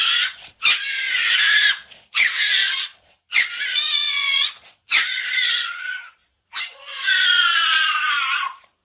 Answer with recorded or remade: remade